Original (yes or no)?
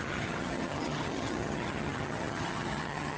no